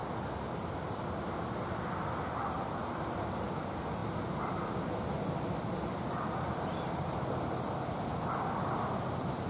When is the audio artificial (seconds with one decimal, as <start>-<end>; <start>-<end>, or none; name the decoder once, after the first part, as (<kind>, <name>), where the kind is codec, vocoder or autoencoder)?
none